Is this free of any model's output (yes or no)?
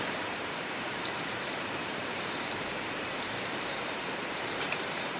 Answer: no